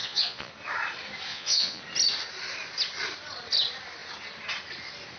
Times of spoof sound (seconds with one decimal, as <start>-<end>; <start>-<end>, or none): 0.0-0.5; 1.3-1.8